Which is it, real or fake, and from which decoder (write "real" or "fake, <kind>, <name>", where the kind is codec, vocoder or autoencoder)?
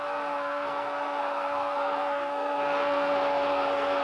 fake, codec, SNAC